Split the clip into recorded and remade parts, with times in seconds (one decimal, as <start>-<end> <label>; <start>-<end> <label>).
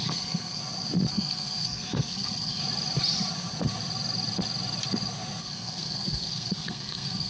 0.0-0.6 remade; 0.6-1.1 recorded; 1.1-2.6 remade; 2.6-5.4 recorded; 5.4-7.3 remade